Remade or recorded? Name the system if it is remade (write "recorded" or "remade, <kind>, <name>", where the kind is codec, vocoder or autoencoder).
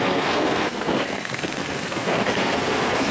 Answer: remade, codec, SNAC